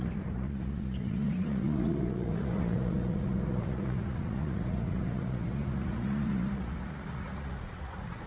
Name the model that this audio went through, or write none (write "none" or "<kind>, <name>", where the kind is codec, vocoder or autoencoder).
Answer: vocoder, Vocos